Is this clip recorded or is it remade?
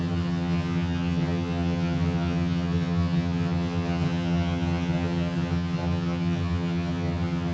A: remade